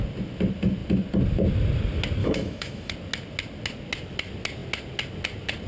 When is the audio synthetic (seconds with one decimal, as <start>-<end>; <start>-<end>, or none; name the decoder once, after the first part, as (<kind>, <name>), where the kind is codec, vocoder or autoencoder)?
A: 2.2-2.9 (autoencoder, DAC-VAE)